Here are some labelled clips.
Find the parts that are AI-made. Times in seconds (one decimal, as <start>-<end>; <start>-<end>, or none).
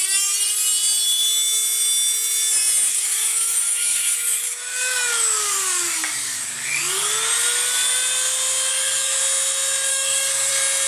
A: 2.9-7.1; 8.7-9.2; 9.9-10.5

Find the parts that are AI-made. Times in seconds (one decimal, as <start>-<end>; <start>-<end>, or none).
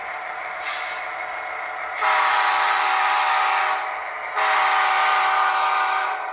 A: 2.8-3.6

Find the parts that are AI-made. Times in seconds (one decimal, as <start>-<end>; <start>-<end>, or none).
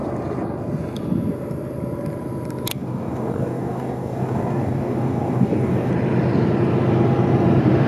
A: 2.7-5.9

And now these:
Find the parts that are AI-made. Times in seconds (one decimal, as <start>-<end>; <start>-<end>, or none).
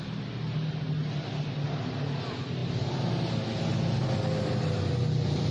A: none